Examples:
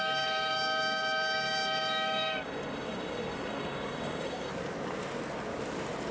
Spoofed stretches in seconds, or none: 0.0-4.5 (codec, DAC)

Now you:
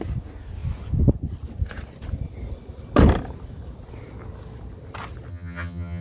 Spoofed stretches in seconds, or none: 5.3-6.0 (vocoder, HiFi-GAN)

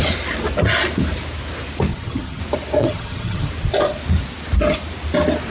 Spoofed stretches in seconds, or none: 1.9-2.4 (vocoder, HiFi-GAN); 2.8-3.5